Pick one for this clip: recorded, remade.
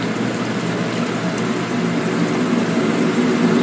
recorded